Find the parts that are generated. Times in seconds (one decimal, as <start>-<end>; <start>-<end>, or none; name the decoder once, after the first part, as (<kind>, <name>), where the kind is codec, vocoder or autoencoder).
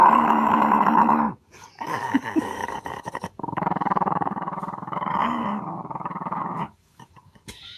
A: 0.0-7.8 (codec, DAC)